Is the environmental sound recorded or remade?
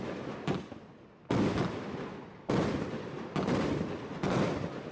recorded